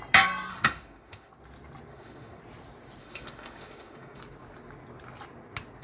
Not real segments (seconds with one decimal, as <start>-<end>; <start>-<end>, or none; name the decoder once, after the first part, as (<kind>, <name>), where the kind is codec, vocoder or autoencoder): 0.5-1.3 (autoencoder, DAC-VAE); 1.9-2.4; 3.0-4.2